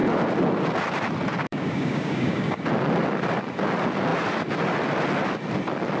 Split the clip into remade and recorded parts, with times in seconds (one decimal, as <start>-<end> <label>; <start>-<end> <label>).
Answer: 0.0-1.4 recorded; 1.4-2.6 remade; 2.6-6.0 recorded